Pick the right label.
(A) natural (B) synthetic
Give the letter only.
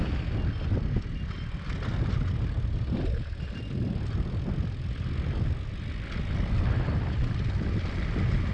A